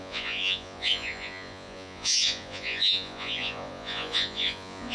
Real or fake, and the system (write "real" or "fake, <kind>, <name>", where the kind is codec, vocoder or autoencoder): fake, vocoder, Vocos